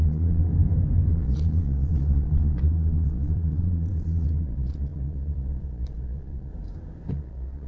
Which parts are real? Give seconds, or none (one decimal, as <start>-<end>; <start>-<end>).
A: 0.5-1.1; 6.5-7.1

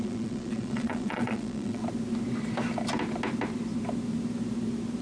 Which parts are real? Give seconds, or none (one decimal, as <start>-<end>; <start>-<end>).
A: 1.8-5.0

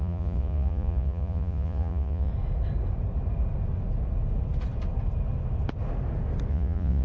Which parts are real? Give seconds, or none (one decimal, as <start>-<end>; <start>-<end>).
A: 2.3-6.5

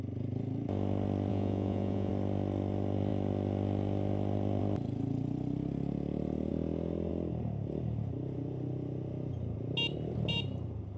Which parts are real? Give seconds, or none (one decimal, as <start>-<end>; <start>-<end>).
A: 0.0-1.3; 2.1-11.0